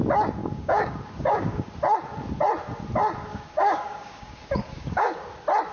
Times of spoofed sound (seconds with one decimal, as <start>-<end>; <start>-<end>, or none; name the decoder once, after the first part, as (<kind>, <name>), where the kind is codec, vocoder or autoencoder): 0.4-1.7 (codec, DAC); 3.3-5.3